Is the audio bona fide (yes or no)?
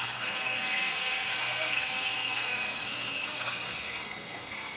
no